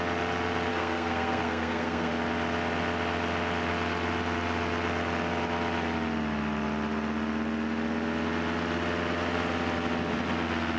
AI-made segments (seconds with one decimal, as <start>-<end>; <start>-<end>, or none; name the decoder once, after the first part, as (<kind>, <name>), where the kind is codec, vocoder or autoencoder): 0.7-2.1 (codec, SNAC)